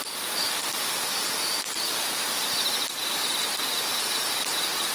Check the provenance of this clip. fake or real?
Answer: fake